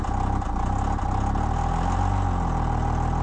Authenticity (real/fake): real